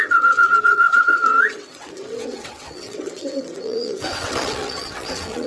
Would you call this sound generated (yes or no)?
yes